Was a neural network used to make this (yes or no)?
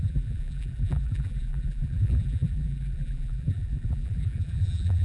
yes